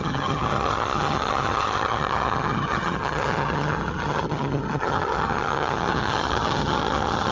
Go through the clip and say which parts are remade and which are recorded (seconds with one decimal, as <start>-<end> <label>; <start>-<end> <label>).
0.0-7.3 remade